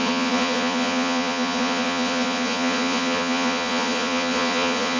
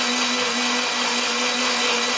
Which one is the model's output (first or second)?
first